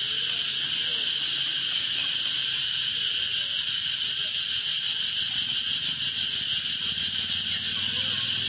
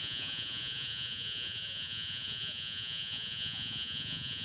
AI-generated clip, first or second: second